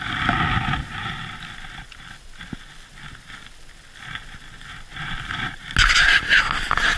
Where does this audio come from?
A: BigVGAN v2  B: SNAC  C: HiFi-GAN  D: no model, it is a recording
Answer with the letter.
D